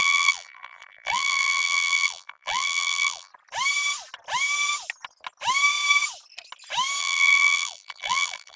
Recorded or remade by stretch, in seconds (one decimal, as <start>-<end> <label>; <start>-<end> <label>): 0.0-3.3 remade; 3.3-7.0 recorded; 7.0-8.6 remade